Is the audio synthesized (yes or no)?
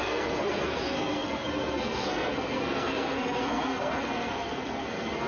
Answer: yes